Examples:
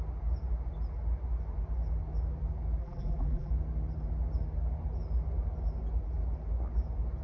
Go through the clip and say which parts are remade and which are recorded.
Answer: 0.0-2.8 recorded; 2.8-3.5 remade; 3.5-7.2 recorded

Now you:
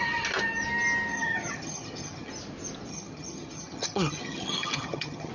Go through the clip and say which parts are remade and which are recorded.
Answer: 0.0-1.1 recorded; 1.1-2.3 remade; 2.3-2.9 recorded; 2.9-5.3 remade

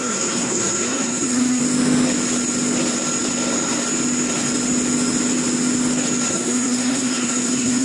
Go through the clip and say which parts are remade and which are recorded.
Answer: 0.0-1.6 remade; 1.6-6.3 recorded; 6.3-7.8 remade

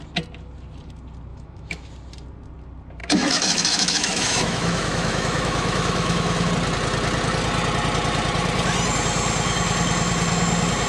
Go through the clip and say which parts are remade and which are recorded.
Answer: 0.0-1.3 recorded; 1.3-1.9 remade; 1.9-3.0 recorded; 3.0-6.5 remade; 6.5-10.9 recorded

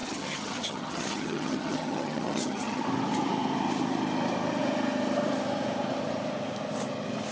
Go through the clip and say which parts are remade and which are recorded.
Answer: 0.0-2.8 remade; 2.8-7.3 recorded